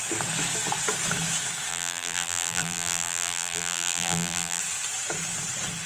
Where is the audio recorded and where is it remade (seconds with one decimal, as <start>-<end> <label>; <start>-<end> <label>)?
0.0-1.7 recorded; 1.7-4.6 remade; 4.6-5.9 recorded